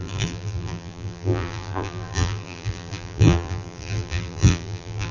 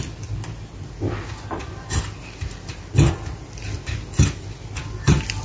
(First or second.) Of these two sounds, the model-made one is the first